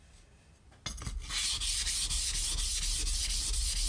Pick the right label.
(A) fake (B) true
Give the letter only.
B